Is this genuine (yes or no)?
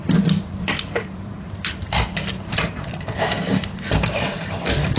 no